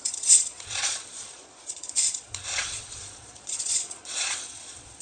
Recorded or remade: remade